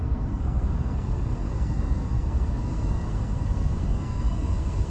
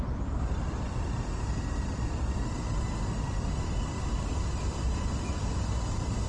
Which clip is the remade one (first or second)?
first